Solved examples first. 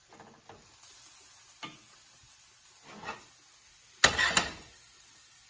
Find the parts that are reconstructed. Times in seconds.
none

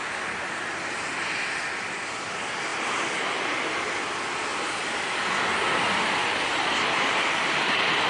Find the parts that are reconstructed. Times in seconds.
2.7-3.3 (vocoder, BigVGAN v2); 4.5-7.5

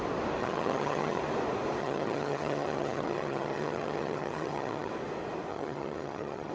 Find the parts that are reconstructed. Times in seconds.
0.4-1.2 (vocoder, HiFi-GAN); 1.8-4.9; 5.5-6.5

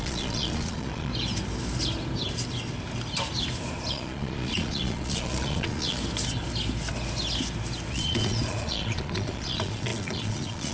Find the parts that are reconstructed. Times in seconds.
0.0-1.1 (vocoder, Vocos); 3.9-6.0; 7.9-10.7

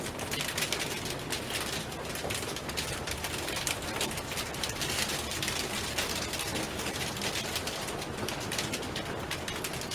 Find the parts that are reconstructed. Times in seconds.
6.5-7.1 (vocoder, BigVGAN v2)

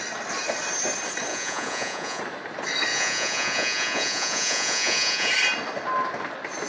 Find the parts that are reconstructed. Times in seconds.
1.3-2.2 (vocoder, Vocos); 2.9-5.3

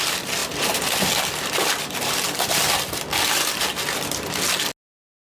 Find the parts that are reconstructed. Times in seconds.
0.4-3.6 (vocoder, BigVGAN v2)